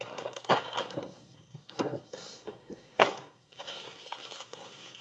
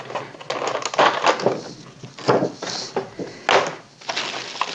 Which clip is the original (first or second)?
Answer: second